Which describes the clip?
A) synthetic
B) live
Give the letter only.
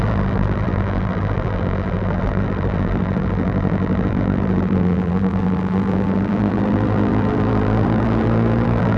A